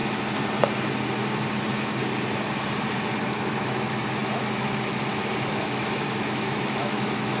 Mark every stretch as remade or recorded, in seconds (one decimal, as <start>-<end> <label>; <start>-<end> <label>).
0.0-3.5 recorded; 3.5-7.4 remade